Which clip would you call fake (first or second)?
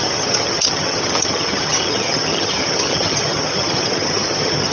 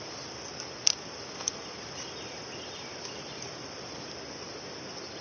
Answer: first